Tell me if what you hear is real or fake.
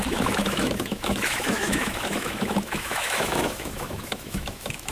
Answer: fake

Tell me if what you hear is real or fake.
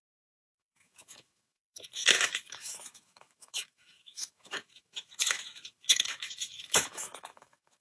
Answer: fake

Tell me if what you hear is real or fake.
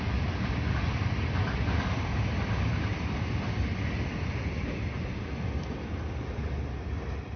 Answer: real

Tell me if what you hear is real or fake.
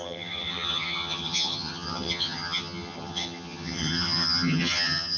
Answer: fake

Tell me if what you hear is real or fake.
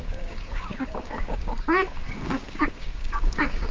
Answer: fake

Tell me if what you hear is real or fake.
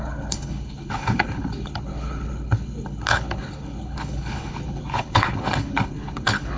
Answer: fake